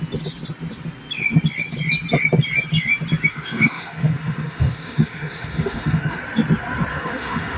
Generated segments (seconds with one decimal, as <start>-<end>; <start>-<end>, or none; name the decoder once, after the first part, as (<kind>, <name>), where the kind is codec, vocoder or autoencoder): 3.3-6.2 (autoencoder, DAC-VAE); 6.9-7.6